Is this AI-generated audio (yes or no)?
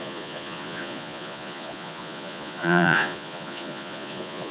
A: yes